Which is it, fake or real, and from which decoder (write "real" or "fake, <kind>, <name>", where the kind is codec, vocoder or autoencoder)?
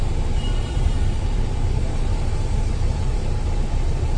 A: fake, vocoder, BigVGAN v2